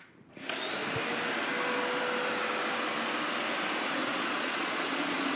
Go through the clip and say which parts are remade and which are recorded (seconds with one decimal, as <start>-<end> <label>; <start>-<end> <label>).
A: 0.0-4.0 recorded; 4.0-5.4 remade

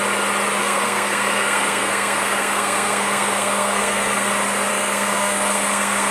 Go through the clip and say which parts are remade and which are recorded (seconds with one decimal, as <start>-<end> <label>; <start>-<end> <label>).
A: 0.0-0.6 recorded; 0.6-4.3 remade; 4.3-4.7 recorded; 4.7-6.1 remade

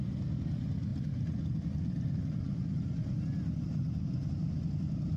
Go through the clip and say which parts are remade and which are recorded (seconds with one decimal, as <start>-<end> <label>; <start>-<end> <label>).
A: 0.0-5.2 recorded

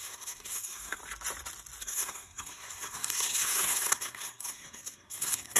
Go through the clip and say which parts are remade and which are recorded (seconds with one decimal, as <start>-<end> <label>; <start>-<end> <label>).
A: 0.0-1.0 remade; 1.0-1.8 recorded; 1.8-5.6 remade

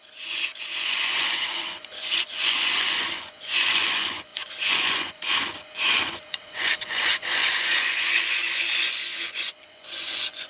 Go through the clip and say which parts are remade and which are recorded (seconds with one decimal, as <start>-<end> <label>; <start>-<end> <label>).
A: 0.0-10.5 remade

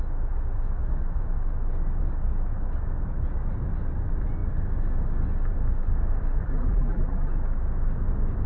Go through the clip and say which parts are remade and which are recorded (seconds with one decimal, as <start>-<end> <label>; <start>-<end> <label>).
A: 0.0-6.4 recorded; 6.4-7.3 remade; 7.3-8.5 recorded

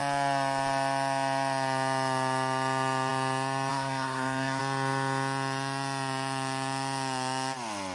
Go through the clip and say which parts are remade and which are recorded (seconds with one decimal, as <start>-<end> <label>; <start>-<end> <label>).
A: 0.0-3.7 recorded; 3.7-4.6 remade; 4.6-7.9 recorded

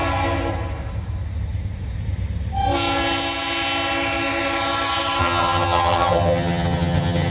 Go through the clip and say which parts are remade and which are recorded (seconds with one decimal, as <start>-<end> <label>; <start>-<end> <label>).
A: 0.0-5.2 recorded; 5.2-7.3 remade